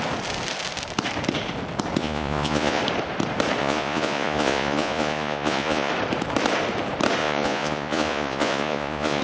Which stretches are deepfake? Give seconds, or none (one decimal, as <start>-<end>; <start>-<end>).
2.0-2.8; 3.6-5.9; 7.2-9.2